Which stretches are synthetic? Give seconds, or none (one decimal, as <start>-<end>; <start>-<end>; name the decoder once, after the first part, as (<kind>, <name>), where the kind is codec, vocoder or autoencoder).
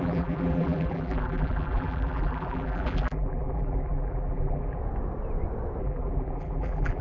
0.0-4.8 (vocoder, BigVGAN v2); 5.8-7.0